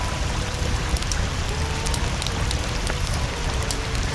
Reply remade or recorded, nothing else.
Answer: recorded